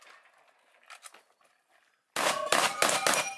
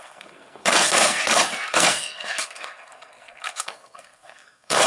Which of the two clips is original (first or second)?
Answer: first